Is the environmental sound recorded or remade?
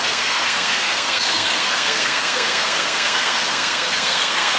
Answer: remade